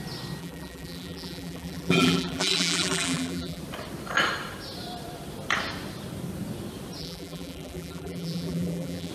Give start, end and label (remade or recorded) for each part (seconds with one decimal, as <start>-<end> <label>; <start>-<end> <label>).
0.0-0.4 recorded; 0.4-3.6 remade; 3.6-7.0 recorded; 7.0-9.1 remade